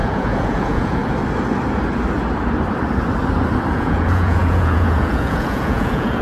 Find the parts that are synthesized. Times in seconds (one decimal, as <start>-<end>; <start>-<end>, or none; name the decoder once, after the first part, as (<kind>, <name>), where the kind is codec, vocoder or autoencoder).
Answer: 0.0-1.0 (vocoder, Vocos); 3.7-6.2